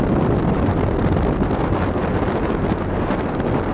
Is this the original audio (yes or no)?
yes